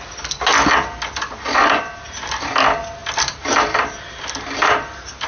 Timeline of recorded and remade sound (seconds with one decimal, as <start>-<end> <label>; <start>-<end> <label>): 0.0-3.0 recorded; 3.0-5.3 remade